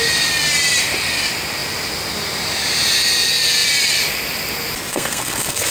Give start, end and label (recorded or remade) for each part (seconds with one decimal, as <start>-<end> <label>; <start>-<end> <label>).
0.0-4.9 recorded; 4.9-5.7 remade